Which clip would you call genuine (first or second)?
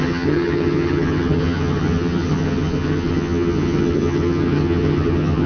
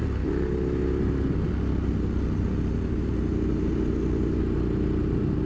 second